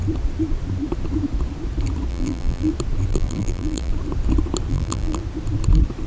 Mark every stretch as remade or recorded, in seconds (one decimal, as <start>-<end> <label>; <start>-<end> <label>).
0.0-2.1 recorded; 2.1-2.7 remade; 2.7-3.1 recorded; 3.1-3.9 remade; 3.9-4.7 recorded; 4.7-5.2 remade; 5.2-6.1 recorded